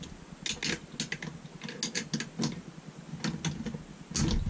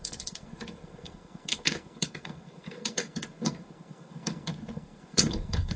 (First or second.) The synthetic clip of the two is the second